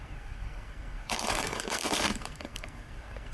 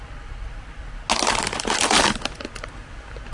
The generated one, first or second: first